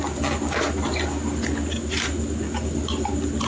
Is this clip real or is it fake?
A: real